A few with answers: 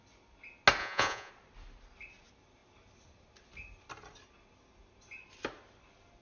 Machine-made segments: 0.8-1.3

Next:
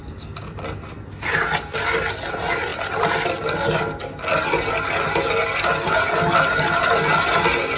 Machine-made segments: none

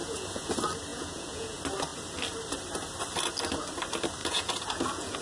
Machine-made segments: 0.0-0.5; 0.9-1.5; 4.2-5.2

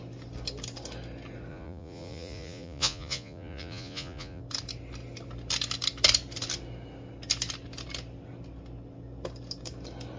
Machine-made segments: 1.5-4.4

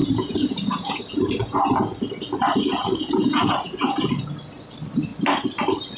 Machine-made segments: 0.0-1.0; 2.7-4.1

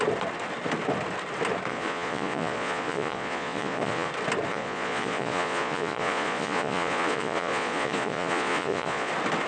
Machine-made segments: 1.7-4.1; 4.5-9.1

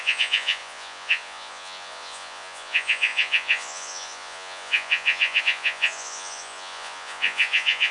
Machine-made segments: 0.0-7.9

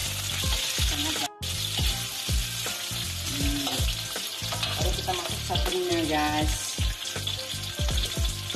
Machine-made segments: none